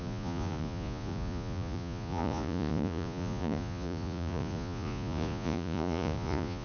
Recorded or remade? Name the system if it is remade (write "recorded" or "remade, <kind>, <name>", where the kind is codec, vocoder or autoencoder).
remade, vocoder, Vocos